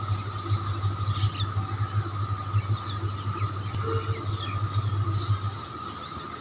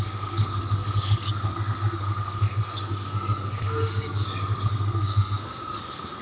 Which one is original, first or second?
first